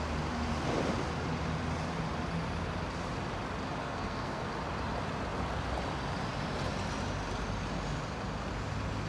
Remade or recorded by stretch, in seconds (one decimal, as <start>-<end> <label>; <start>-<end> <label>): 0.0-3.8 recorded; 3.8-4.5 remade; 4.5-9.1 recorded